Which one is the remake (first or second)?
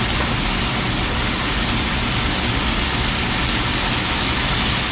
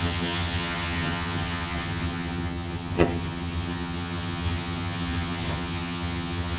second